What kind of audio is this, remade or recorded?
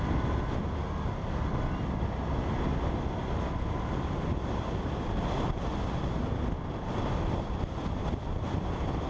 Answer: recorded